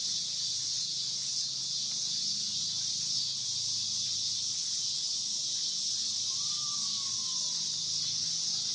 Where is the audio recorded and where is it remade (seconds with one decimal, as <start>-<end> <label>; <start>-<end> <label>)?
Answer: 0.0-8.7 recorded